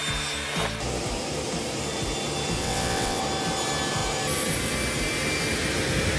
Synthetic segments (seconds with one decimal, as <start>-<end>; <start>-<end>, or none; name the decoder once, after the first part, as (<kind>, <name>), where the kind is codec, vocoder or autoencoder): 2.6-3.2 (vocoder, WaveNeXt)